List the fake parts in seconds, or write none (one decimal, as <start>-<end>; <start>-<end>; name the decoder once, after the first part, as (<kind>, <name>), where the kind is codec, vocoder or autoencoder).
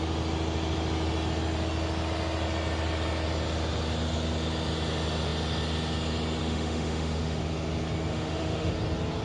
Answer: 6.4-7.4 (autoencoder, DAC-VAE); 8.1-8.7